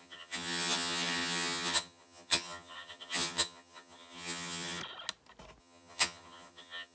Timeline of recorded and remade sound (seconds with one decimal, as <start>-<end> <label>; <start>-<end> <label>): 0.0-4.8 remade; 4.8-5.6 recorded; 5.6-6.9 remade